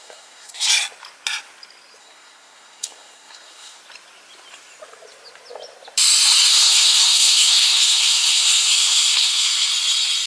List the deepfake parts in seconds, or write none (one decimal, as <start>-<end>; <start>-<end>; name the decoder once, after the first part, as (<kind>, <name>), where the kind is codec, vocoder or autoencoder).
0.0-0.7 (codec, SNAC); 2.0-3.8; 6.5-9.7